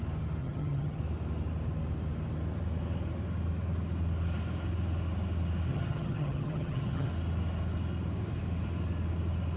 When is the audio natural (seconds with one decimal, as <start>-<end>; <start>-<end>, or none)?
0.0-0.4; 1.0-5.7; 7.1-9.6